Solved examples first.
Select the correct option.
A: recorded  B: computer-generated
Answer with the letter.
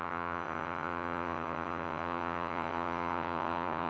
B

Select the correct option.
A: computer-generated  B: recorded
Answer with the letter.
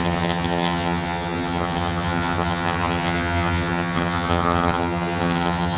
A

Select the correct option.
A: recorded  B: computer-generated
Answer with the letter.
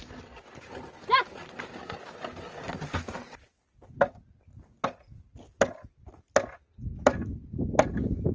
A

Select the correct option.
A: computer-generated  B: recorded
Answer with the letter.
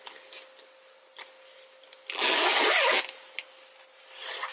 B